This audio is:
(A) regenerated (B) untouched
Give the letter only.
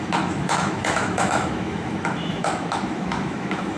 A